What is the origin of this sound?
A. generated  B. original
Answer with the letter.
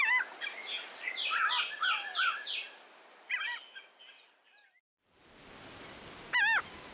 B